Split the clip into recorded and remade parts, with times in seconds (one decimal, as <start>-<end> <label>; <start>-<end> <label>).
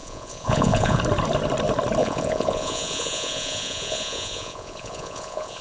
0.0-1.0 remade; 1.0-2.0 recorded; 2.0-5.6 remade